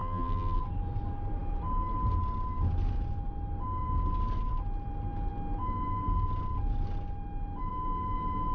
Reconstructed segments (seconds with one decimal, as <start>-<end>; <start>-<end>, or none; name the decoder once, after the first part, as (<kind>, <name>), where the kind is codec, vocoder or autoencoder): 0.0-0.6 (vocoder, BigVGAN v2)